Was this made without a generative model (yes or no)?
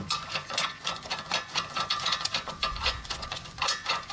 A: no